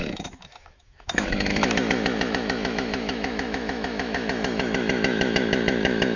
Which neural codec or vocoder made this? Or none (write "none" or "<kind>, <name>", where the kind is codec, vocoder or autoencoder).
autoencoder, DAC-VAE